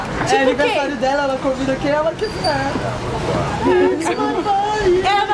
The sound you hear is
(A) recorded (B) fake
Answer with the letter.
A